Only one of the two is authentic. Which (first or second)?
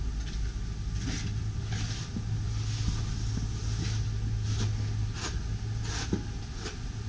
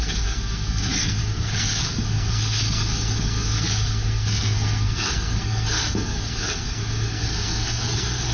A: first